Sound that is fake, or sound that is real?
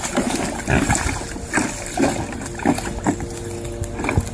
real